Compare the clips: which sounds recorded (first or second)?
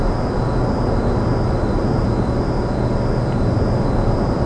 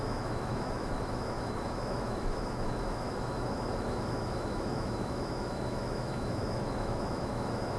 first